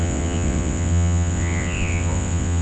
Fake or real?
fake